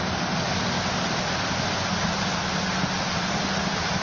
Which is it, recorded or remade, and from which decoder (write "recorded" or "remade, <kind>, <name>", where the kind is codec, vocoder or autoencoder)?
recorded